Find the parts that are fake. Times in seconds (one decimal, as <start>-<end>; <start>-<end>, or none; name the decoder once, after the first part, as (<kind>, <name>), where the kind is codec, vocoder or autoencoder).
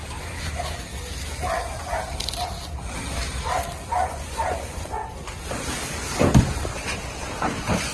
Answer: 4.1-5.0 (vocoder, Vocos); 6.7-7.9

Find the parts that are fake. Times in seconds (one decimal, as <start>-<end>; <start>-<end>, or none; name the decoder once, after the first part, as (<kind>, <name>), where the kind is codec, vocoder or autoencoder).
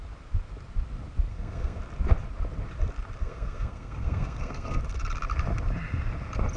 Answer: 1.3-1.8 (codec, SNAC); 3.2-4.8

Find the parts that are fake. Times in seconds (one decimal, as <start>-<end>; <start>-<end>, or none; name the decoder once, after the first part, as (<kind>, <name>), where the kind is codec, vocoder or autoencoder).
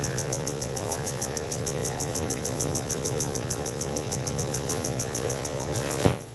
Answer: 0.0-6.3 (vocoder, Vocos)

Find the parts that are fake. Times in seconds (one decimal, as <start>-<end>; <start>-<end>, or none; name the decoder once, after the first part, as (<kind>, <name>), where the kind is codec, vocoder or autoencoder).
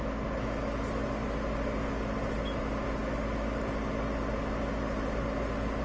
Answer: none